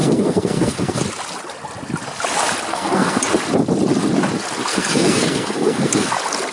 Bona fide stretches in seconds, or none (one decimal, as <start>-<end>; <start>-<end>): 1.0-2.7; 3.2-4.7; 6.1-6.5